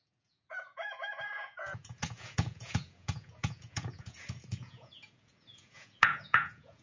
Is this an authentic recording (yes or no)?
no